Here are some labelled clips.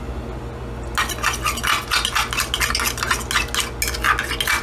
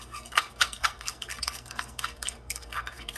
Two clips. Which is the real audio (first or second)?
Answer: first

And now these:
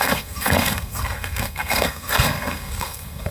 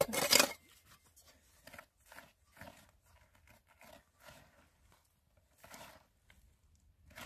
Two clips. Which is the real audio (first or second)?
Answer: second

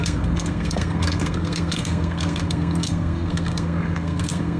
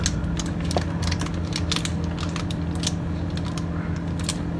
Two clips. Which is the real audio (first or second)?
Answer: second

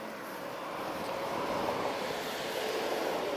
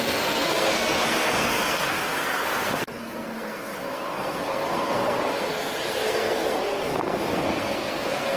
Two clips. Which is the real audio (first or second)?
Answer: first